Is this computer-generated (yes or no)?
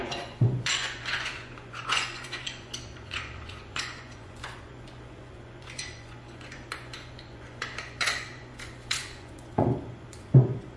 yes